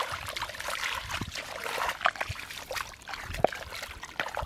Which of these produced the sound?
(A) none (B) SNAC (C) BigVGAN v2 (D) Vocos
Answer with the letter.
A